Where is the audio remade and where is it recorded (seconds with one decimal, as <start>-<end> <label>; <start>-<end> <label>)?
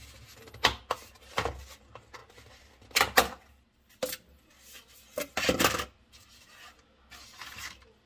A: 0.0-8.1 recorded